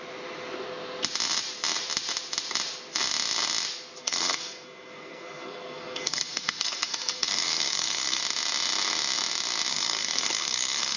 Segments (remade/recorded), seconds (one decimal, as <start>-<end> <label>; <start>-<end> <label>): 0.0-4.0 recorded; 4.0-8.2 remade; 8.2-9.7 recorded; 9.7-11.0 remade